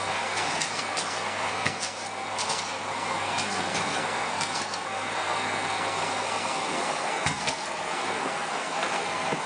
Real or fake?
fake